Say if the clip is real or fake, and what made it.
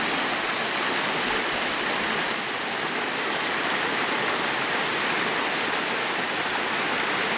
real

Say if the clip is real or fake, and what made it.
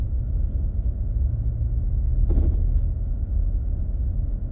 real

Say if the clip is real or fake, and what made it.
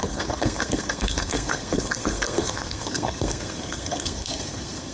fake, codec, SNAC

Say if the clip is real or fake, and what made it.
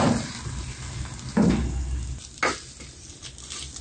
real